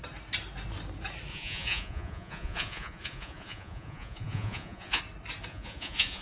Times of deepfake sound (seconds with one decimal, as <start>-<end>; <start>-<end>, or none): 1.3-5.0; 5.5-6.2